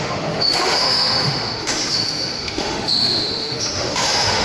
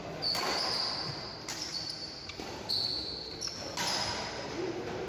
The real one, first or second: second